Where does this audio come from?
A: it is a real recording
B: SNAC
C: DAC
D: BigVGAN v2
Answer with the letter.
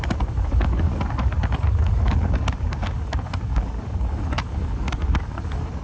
C